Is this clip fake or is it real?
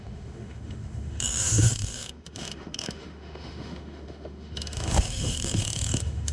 fake